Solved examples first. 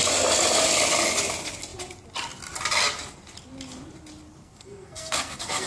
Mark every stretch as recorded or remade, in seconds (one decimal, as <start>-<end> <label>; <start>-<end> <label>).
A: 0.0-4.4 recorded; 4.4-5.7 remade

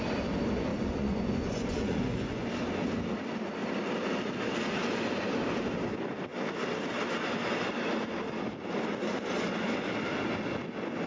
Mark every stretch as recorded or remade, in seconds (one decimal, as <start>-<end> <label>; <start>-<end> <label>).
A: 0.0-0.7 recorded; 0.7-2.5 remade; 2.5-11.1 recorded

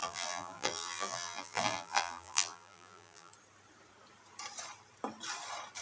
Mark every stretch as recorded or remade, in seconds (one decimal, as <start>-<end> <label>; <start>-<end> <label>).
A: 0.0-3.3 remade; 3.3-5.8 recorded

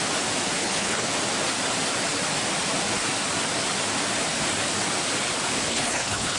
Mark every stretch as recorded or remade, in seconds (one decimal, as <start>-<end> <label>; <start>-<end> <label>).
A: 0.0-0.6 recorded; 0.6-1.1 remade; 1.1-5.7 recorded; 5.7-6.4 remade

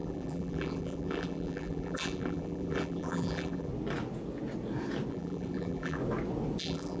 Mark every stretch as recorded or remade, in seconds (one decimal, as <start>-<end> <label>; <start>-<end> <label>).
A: 0.0-3.7 remade; 3.7-5.1 recorded; 5.1-6.0 remade; 6.0-6.6 recorded; 6.6-7.0 remade